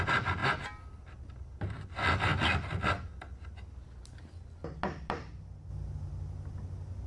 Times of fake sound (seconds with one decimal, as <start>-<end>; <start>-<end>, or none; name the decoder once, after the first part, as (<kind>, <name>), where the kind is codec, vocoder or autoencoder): none

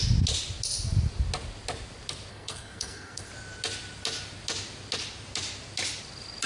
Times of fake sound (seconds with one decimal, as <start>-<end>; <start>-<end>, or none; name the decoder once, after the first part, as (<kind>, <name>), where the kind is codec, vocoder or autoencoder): 2.3-3.3 (codec, SNAC)

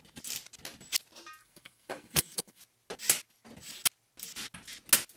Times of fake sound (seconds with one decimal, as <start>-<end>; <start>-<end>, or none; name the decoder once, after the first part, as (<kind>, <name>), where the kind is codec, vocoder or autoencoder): 1.4-2.6 (codec, SNAC)

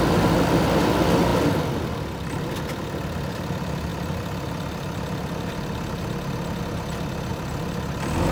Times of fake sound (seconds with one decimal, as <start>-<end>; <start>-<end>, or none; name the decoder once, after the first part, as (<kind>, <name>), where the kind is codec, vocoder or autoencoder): none

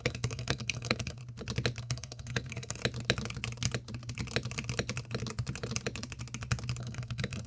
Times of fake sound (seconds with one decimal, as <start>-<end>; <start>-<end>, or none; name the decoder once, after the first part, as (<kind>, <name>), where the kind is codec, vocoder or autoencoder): 0.0-1.2 (codec, SNAC); 1.8-2.8; 6.8-7.5

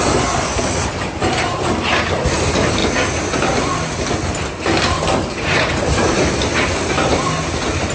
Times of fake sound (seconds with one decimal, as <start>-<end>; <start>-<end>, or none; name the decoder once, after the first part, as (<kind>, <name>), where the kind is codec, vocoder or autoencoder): none

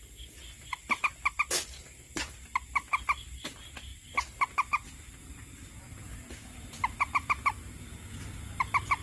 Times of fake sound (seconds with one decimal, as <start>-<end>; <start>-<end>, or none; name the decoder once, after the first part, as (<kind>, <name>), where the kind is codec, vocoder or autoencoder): none